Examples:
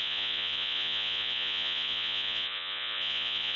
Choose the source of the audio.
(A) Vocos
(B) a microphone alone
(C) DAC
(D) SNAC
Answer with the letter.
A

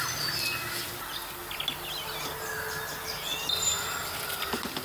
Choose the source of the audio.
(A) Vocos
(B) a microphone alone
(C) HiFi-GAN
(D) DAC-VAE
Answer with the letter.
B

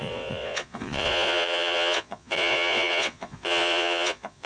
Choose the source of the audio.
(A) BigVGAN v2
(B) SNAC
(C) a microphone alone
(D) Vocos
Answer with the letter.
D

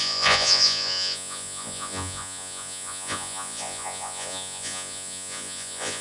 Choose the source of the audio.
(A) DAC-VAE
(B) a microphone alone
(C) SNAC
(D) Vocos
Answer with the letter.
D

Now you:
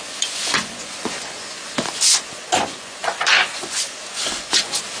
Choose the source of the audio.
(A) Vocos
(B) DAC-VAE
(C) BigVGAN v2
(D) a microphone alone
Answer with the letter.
A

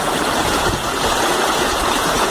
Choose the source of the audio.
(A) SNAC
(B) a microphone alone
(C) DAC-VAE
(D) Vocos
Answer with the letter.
D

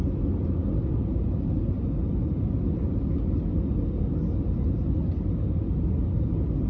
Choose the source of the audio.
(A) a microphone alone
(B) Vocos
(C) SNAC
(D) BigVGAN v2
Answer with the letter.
A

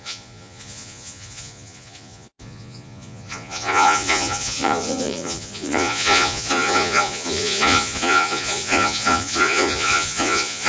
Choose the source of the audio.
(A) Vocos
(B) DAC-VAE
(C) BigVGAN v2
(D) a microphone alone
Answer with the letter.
A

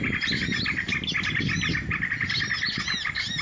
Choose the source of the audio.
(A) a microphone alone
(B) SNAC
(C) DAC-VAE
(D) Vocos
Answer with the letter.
A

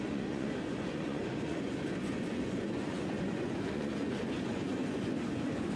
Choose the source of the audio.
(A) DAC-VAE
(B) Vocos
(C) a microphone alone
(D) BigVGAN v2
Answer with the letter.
B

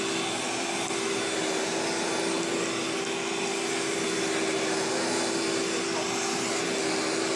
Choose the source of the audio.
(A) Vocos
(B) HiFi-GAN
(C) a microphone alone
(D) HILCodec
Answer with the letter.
C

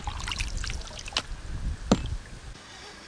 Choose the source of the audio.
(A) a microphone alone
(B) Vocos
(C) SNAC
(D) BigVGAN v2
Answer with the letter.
A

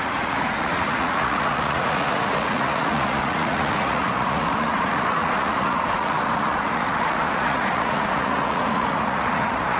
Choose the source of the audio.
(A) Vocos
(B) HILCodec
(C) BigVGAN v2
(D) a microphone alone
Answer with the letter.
A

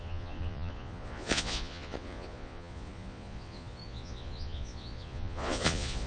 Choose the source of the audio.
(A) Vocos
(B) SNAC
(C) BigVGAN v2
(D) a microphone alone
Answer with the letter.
A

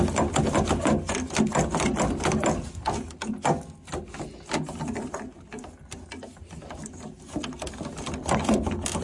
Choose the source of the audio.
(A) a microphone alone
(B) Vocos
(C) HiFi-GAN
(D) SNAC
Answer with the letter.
A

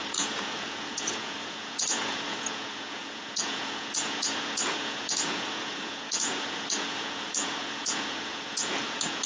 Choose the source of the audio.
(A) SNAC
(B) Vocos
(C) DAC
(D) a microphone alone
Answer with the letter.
B